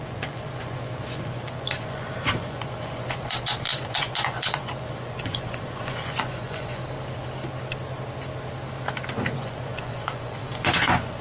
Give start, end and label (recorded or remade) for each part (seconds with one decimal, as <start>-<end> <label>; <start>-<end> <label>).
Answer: 0.0-6.8 remade; 6.8-9.3 recorded; 9.3-11.2 remade